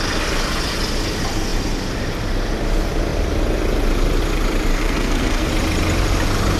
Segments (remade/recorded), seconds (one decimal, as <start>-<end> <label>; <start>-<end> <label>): 0.0-4.7 recorded; 4.7-5.5 remade; 5.5-6.6 recorded